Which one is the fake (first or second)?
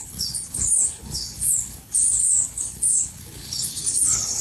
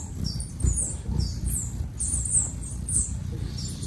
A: first